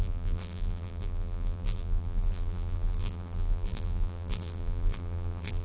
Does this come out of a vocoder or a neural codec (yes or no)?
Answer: yes